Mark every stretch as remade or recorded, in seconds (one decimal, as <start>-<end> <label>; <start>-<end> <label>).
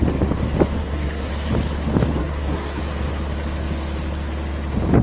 0.0-0.8 recorded; 0.8-1.3 remade; 1.3-2.2 recorded; 2.2-2.8 remade; 2.8-5.0 recorded